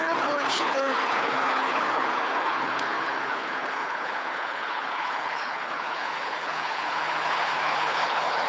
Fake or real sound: fake